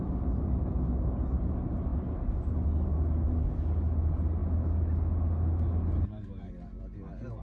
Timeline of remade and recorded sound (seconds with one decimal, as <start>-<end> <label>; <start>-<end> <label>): 0.0-7.4 recorded